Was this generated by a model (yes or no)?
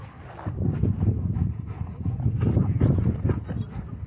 no